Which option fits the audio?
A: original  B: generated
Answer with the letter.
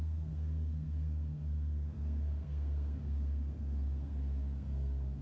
B